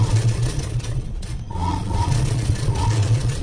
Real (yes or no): no